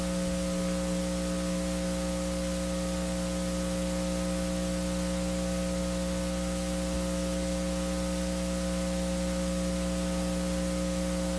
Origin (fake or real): real